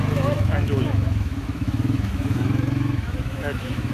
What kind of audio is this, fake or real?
fake